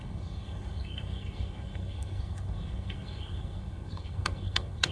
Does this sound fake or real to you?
fake